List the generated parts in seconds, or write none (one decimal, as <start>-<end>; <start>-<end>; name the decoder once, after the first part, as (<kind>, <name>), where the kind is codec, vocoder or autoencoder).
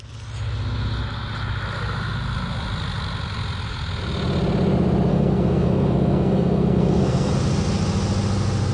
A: 5.1-7.3 (codec, SNAC)